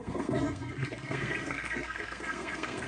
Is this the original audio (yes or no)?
no